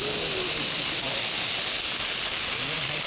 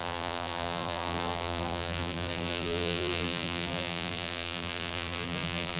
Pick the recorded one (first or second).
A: first